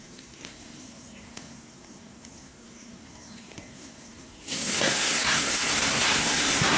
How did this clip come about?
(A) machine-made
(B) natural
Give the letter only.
A